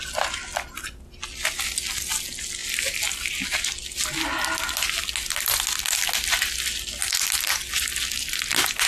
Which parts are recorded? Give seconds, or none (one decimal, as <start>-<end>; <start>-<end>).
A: 0.0-8.9